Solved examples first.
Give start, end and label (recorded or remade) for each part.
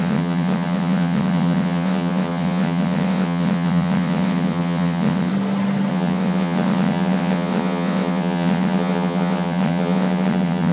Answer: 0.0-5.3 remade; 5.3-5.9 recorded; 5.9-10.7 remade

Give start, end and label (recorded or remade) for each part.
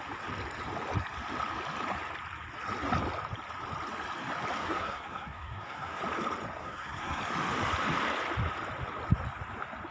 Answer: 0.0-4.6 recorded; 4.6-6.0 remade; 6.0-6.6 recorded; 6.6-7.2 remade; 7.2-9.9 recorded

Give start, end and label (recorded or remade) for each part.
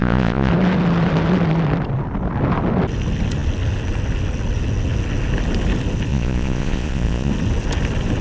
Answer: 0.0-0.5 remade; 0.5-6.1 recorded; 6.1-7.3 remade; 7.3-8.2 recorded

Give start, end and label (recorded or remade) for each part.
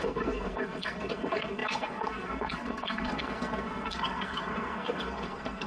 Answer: 0.0-5.7 remade